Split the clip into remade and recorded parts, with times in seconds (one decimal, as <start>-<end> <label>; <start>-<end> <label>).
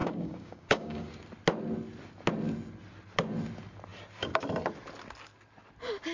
0.0-1.1 remade; 1.1-6.1 recorded